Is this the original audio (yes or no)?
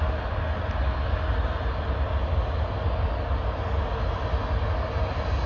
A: yes